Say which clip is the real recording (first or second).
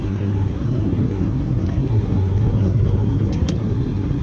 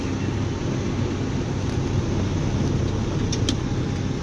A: second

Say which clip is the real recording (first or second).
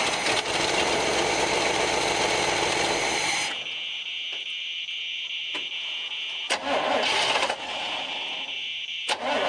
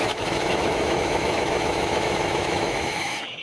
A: first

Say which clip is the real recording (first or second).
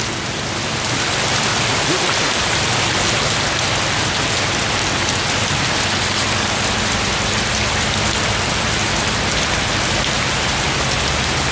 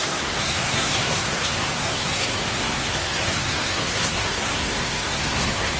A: first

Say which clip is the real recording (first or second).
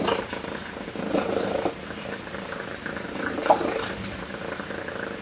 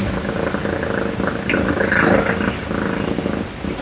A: second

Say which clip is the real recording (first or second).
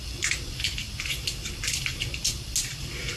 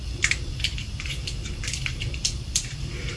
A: first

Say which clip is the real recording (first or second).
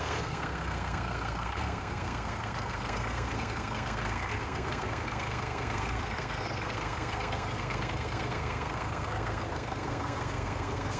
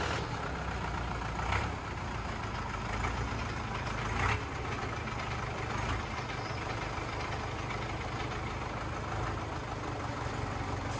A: second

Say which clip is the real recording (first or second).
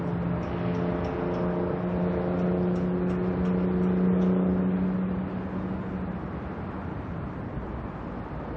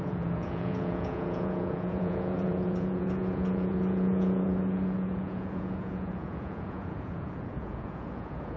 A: first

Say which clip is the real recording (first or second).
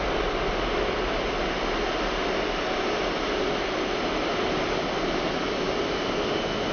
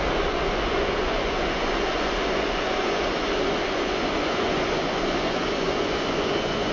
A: first